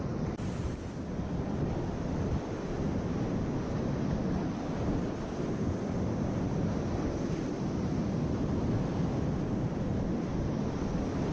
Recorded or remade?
recorded